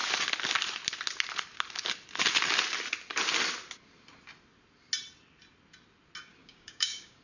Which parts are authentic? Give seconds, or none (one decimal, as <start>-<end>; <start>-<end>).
0.0-6.3